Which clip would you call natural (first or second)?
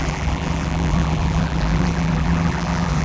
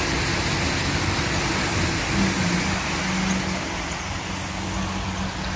second